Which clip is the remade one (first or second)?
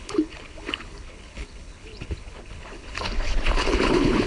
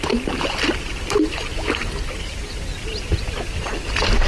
first